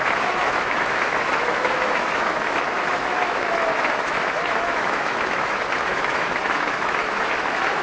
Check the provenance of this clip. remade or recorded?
remade